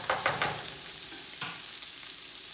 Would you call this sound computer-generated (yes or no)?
no